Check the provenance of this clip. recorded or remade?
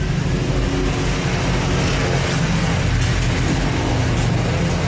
recorded